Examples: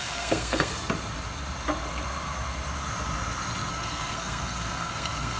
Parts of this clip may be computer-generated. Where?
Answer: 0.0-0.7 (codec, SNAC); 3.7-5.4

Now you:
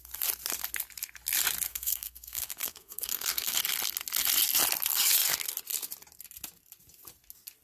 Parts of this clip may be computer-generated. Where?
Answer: 1.7-3.6 (codec, SNAC)

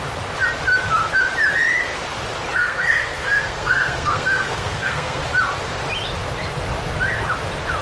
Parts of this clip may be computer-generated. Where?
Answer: 2.6-5.2 (codec, SNAC)

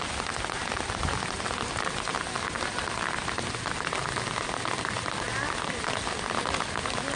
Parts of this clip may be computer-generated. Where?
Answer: none

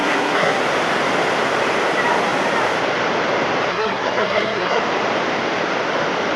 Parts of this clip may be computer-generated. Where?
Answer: 0.0-0.6 (codec, SNAC); 3.7-4.8

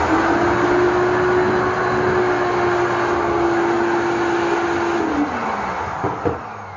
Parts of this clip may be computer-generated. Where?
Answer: none

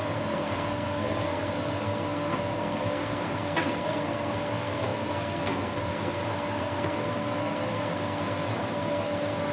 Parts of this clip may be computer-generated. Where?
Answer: 0.0-9.5 (codec, SNAC)